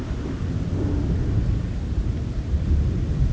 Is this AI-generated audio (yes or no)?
no